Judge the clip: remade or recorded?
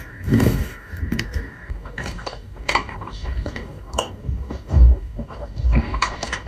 remade